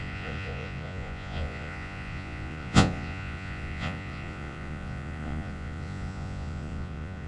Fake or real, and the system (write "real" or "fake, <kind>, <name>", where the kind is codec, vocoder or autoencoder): fake, vocoder, Vocos